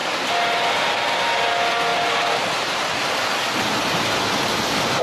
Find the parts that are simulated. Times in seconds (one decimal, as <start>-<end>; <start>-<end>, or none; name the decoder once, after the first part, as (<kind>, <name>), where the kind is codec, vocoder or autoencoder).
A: none